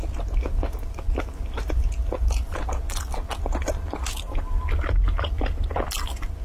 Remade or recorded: recorded